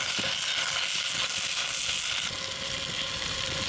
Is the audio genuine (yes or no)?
yes